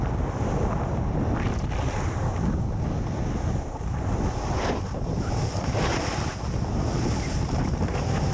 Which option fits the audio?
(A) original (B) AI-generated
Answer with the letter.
A